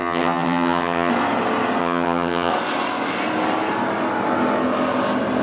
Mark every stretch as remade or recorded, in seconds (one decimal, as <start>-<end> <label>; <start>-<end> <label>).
0.0-1.1 remade; 1.1-1.8 recorded; 1.8-2.5 remade; 2.5-5.4 recorded